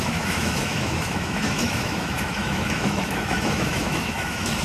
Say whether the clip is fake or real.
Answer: fake